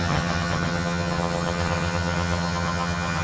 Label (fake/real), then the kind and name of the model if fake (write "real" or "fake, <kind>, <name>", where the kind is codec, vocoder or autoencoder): fake, vocoder, HiFi-GAN